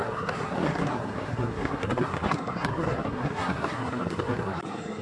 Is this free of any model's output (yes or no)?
no